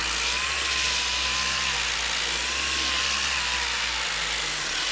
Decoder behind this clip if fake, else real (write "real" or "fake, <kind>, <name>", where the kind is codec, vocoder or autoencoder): real